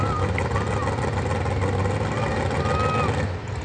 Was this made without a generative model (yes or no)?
yes